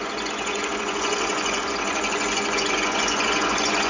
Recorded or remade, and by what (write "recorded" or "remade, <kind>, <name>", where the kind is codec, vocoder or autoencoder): remade, vocoder, Vocos